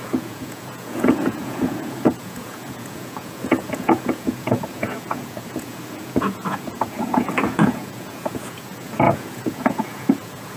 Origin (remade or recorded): remade